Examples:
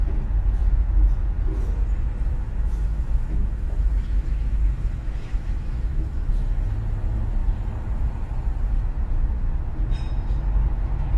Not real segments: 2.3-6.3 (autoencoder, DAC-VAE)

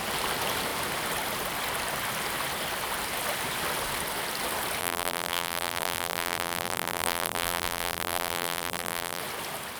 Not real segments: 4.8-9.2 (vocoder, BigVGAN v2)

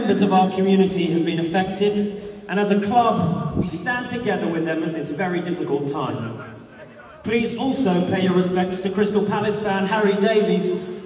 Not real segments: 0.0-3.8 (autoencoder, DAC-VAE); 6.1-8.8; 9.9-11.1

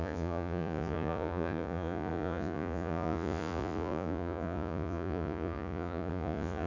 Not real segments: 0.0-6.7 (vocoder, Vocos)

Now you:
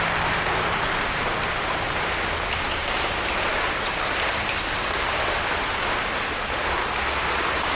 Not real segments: none

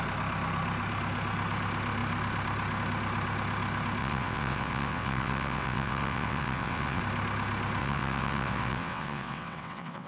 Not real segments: 4.0-7.0 (vocoder, WaveNeXt); 7.8-10.1

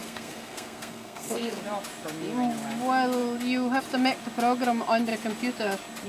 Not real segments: 0.0-1.6 (codec, SNAC)